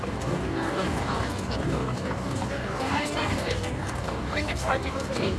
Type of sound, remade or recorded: remade